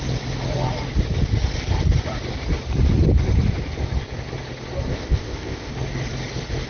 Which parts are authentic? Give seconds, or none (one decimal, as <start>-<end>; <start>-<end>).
0.0-4.9; 5.7-6.7